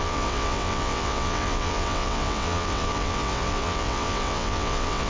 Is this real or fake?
fake